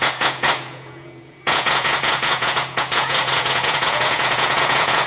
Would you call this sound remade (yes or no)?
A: yes